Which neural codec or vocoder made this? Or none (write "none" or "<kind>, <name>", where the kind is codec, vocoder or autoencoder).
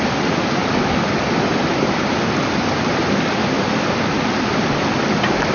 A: none